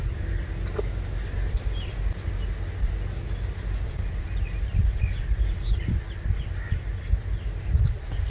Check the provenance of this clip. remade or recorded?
recorded